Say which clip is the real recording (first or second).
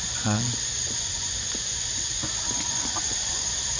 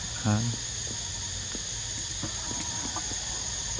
second